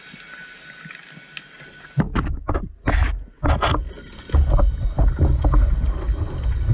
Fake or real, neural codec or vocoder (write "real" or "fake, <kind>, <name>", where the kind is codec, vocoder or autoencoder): real